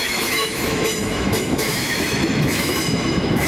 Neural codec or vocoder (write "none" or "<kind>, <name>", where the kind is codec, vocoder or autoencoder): autoencoder, DAC-VAE